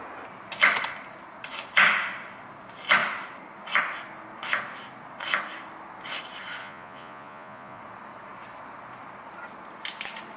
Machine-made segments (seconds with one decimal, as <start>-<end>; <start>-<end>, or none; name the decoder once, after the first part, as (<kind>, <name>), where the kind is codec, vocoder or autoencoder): 6.6-7.8 (vocoder, Vocos)